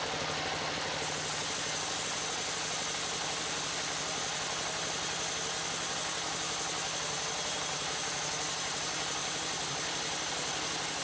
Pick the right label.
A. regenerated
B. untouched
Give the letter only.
B